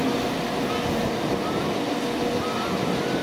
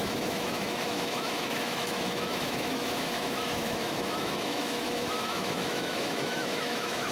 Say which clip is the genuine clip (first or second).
first